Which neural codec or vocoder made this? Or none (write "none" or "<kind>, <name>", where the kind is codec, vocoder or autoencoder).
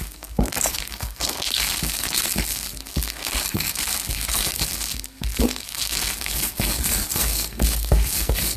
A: codec, SNAC